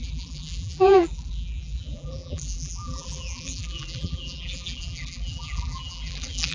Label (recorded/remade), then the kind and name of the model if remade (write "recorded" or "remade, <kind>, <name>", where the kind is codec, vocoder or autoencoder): remade, vocoder, BigVGAN v2